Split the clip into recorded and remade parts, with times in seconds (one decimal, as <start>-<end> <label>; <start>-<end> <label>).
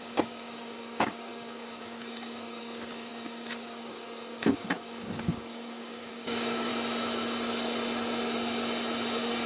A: 0.0-6.7 remade; 6.7-9.5 recorded